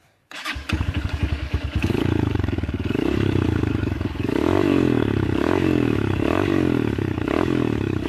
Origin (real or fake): fake